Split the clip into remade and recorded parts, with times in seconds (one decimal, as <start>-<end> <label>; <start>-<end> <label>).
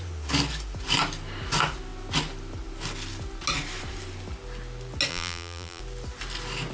0.0-5.1 recorded; 5.1-5.8 remade; 5.8-6.7 recorded